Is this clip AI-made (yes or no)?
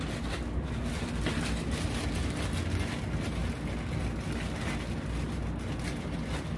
no